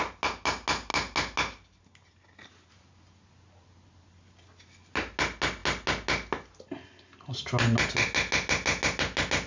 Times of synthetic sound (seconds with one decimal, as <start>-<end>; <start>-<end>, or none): none